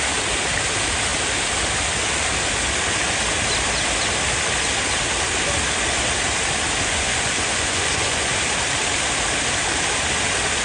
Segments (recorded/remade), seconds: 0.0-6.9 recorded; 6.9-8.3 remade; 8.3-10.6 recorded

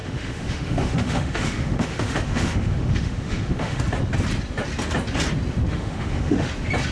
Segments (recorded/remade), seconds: 0.0-3.8 remade; 3.8-5.7 recorded; 5.7-6.5 remade; 6.5-6.9 recorded

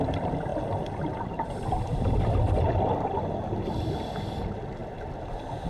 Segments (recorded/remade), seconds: 0.0-4.8 remade; 4.8-5.7 recorded

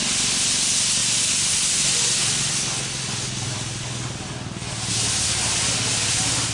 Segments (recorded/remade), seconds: 0.0-6.5 recorded

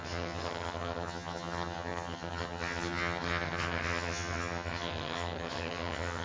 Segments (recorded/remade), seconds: 0.0-6.2 remade

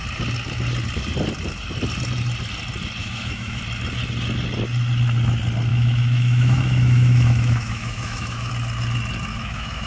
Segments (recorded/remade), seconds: 0.0-3.0 recorded; 3.0-3.6 remade; 3.6-5.7 recorded; 5.7-8.5 remade; 8.5-9.3 recorded; 9.3-9.9 remade